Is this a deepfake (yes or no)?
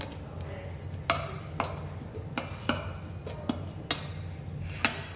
no